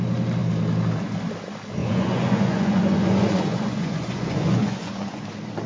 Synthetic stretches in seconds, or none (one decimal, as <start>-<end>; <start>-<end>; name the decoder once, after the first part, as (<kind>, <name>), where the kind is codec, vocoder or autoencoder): 1.8-5.2 (vocoder, Vocos)